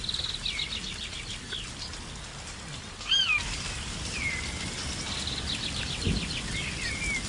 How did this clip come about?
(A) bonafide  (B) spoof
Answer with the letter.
A